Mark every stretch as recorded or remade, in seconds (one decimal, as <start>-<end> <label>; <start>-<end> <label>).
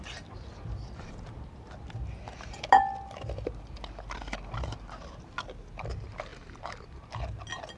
0.0-7.8 recorded